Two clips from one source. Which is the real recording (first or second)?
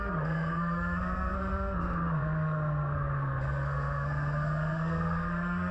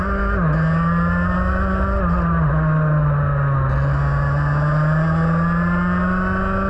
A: second